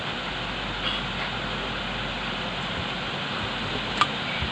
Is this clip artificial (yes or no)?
no